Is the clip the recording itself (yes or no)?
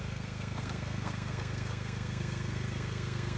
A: no